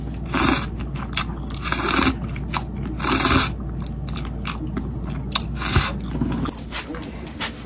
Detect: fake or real real